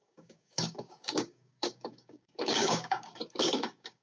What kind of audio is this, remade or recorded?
remade